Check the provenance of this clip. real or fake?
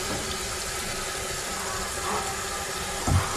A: real